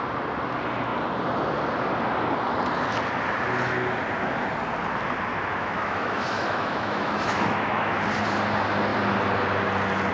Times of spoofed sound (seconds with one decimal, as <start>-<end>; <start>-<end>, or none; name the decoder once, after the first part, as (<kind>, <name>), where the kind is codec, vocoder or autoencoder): 5.3-8.0 (autoencoder, DAC-VAE)